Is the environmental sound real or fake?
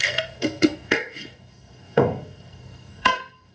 fake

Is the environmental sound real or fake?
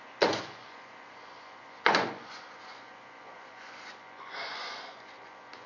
fake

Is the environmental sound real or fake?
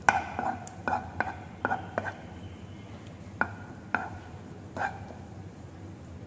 real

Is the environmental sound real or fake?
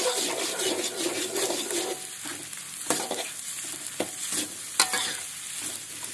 real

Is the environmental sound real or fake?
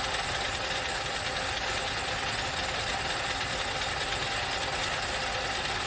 real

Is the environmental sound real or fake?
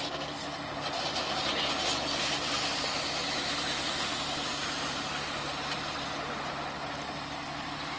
real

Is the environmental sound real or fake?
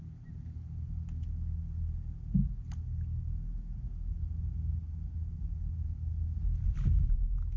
real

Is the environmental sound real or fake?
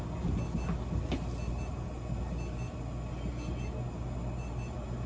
real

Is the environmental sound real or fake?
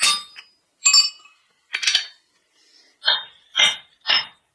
real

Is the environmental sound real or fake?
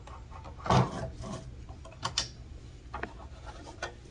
real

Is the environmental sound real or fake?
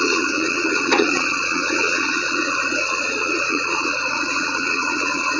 fake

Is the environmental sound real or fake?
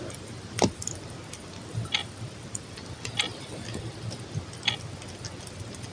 real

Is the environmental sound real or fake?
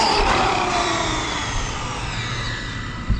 fake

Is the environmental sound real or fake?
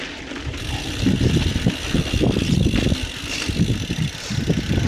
real